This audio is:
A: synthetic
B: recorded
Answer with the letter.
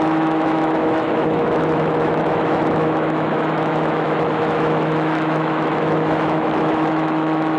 A